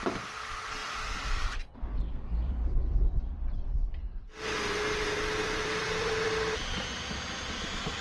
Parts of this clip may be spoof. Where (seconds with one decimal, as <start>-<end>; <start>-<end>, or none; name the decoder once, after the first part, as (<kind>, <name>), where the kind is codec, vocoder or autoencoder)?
0.8-4.0 (vocoder, BigVGAN v2); 5.4-6.6